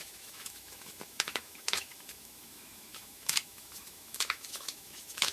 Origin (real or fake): fake